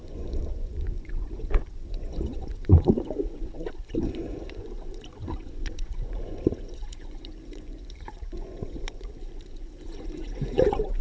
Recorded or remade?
remade